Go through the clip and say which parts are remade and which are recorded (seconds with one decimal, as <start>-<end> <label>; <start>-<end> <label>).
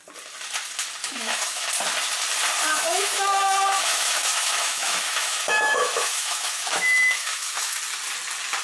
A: 0.0-1.0 recorded; 1.0-1.7 remade; 1.7-2.7 recorded; 2.7-7.8 remade; 7.8-8.6 recorded